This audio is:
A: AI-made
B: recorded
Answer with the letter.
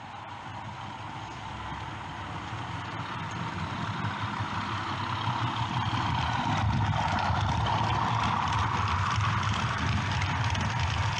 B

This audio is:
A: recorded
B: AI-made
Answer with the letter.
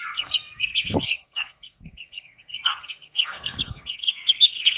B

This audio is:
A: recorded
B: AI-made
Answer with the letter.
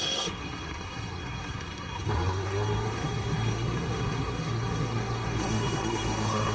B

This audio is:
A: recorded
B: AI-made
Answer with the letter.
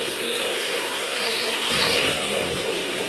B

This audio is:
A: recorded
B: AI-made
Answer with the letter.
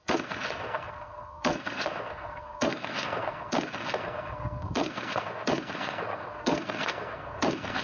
B